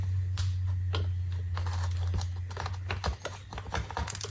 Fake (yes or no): no